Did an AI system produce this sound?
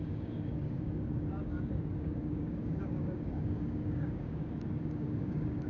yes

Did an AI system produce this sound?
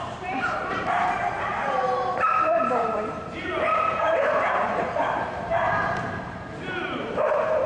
yes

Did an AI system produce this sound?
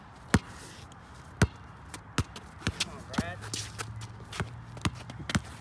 no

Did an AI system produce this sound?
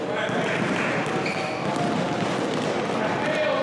no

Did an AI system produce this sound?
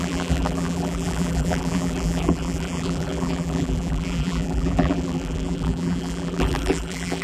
yes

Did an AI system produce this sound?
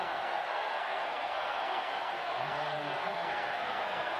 yes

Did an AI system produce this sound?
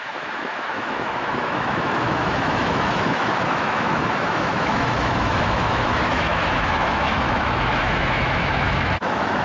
yes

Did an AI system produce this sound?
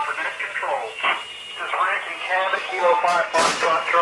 no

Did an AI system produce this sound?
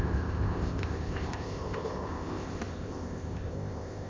yes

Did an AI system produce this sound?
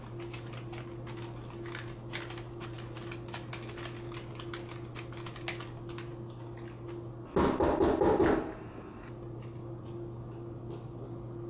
no